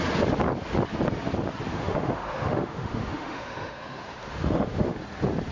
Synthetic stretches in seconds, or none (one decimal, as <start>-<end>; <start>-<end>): 1.7-5.0